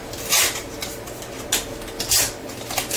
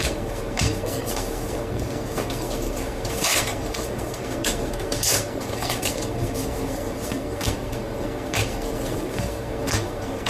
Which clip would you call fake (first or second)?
second